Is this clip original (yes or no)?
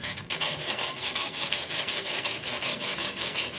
no